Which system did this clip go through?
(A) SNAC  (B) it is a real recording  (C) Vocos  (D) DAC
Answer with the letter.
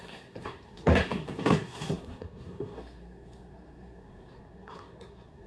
A